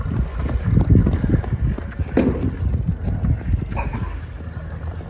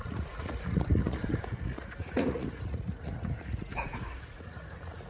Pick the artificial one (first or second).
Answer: second